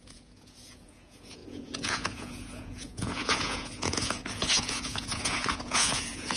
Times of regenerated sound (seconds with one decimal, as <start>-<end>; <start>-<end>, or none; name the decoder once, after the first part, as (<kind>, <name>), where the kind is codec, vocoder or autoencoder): 0.0-6.4 (vocoder, Vocos)